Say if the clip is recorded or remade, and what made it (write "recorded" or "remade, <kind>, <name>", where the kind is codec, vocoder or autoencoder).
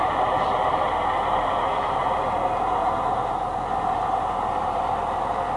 recorded